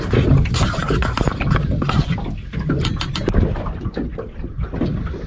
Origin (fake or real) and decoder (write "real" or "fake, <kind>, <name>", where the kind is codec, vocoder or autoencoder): real